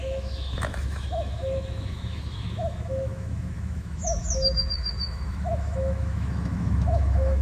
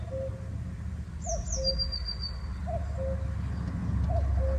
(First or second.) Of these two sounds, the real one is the second